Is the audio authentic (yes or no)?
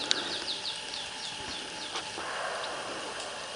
yes